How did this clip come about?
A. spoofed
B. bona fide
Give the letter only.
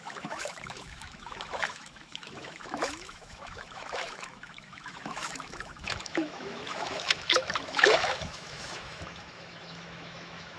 A